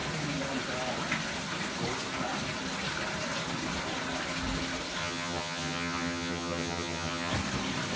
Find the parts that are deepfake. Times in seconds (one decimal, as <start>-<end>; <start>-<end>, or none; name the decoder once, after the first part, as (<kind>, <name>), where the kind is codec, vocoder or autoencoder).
5.0-7.3 (vocoder, HiFi-GAN)